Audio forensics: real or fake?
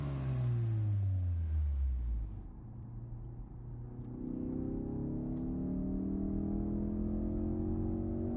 real